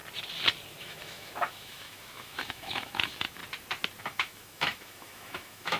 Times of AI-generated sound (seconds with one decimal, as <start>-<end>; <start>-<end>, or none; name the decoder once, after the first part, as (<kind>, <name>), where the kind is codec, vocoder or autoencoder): 0.8-3.4 (autoencoder, DAC-VAE); 4.0-5.8